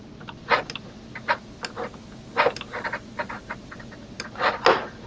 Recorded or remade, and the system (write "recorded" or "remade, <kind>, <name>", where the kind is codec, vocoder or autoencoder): recorded